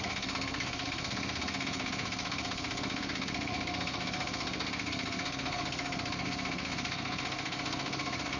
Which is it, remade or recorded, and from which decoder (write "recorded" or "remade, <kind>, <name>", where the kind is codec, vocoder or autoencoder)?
remade, codec, SNAC